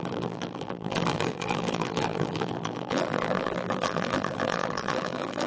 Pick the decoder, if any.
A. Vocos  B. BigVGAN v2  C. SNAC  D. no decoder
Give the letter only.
B